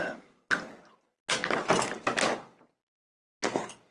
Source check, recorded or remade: recorded